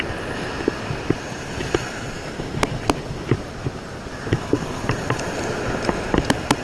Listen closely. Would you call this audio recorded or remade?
recorded